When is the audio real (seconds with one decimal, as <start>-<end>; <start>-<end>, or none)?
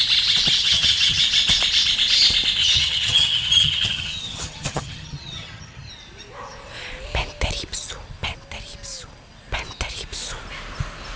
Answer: 0.0-0.6; 1.2-2.6; 5.9-11.2